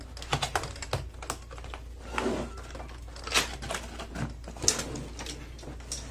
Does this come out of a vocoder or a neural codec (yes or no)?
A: no